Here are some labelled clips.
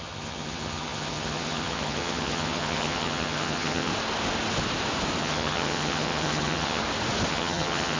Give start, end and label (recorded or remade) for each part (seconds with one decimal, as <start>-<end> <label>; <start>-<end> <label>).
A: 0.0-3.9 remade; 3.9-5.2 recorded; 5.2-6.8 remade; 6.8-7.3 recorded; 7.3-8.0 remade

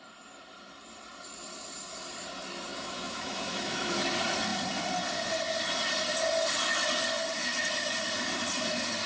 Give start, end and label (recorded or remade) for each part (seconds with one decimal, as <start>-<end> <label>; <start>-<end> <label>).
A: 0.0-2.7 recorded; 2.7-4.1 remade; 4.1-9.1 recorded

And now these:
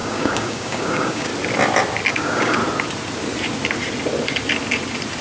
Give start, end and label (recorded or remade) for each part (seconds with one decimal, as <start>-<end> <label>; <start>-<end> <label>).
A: 0.0-1.3 remade; 1.3-2.1 recorded; 2.1-2.6 remade; 2.6-5.2 recorded